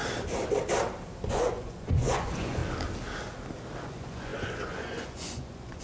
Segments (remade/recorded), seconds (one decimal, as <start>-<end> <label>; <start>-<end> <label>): 0.0-1.3 recorded; 1.3-2.6 remade; 2.6-3.8 recorded; 3.8-5.8 remade